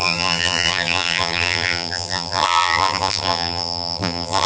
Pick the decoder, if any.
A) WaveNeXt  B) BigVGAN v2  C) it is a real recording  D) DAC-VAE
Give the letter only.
B